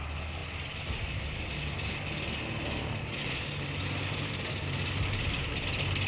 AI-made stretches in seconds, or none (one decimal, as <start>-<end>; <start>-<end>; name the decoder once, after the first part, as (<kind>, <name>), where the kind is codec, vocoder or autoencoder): none